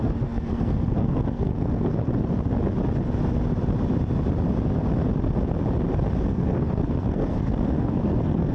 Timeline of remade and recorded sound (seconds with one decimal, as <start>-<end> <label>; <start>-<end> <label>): 0.0-2.1 remade; 2.1-6.2 recorded; 6.2-8.5 remade